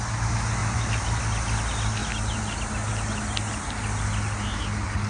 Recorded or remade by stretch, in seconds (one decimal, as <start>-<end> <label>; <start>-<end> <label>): 0.0-0.6 recorded; 0.6-1.2 remade; 1.2-5.1 recorded